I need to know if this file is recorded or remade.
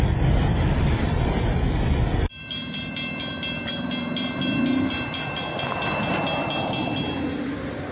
remade